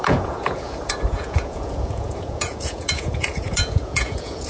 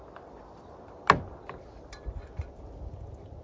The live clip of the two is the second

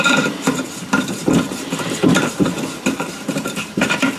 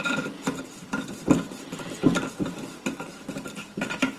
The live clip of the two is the second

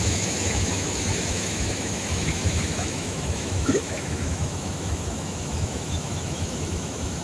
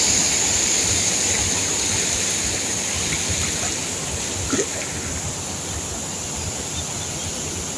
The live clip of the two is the second